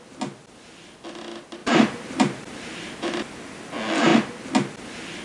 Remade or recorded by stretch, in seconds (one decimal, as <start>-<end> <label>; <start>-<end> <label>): 0.0-1.6 recorded; 1.6-3.2 remade; 3.2-5.2 recorded